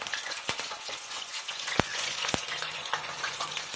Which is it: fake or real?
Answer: fake